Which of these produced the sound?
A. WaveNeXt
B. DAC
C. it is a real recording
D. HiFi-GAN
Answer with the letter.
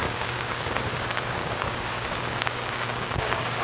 B